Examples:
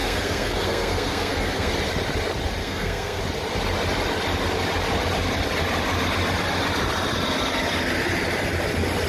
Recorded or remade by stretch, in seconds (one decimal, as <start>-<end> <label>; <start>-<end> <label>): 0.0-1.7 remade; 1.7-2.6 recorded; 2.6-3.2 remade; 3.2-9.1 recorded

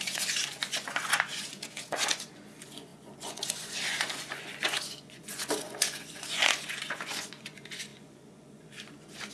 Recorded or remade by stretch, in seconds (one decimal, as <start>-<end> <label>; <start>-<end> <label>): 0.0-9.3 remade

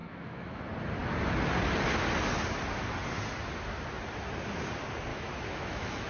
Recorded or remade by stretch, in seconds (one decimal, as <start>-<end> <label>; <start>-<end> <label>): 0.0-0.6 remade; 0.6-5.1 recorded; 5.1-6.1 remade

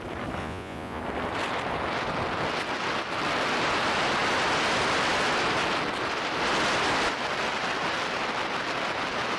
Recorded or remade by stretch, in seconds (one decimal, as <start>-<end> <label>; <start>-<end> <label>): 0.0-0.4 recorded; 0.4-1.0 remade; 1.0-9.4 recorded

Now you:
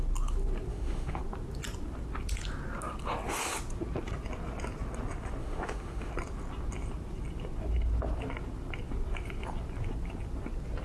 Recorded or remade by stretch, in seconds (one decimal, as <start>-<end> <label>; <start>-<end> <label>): 0.0-0.7 recorded; 0.7-1.2 remade; 1.2-5.4 recorded; 5.4-6.1 remade; 6.1-10.8 recorded

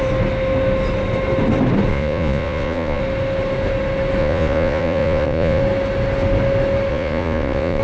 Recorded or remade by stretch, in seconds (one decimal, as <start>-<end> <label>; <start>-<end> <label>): 0.0-1.9 recorded; 1.9-3.0 remade; 3.0-4.2 recorded; 4.2-5.6 remade; 5.6-6.9 recorded; 6.9-7.8 remade